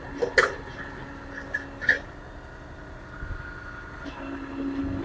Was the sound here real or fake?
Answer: real